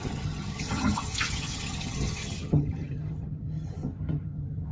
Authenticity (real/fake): fake